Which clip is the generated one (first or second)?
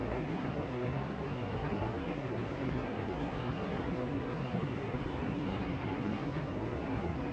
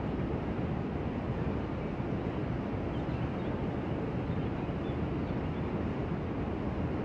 first